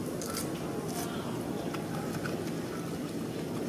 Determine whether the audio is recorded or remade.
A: recorded